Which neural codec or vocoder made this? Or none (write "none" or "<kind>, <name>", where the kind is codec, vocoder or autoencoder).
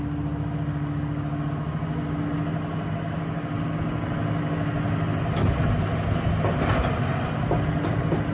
none